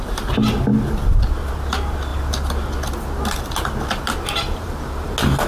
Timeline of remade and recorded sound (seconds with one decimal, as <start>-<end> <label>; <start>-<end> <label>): 0.0-5.5 recorded